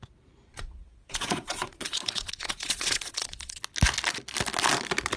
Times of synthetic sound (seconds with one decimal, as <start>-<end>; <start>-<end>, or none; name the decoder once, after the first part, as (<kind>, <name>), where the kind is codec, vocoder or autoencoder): 0.5-3.6 (vocoder, Vocos)